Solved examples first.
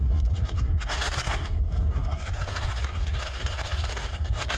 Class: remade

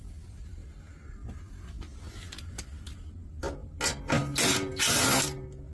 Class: recorded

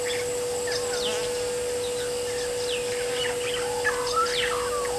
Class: recorded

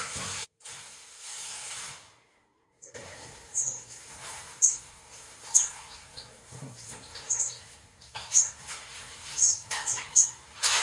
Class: remade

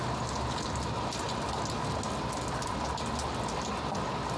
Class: recorded